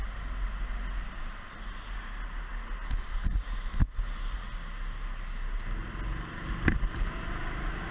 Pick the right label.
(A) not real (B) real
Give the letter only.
B